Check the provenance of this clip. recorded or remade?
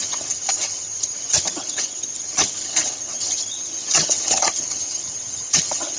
remade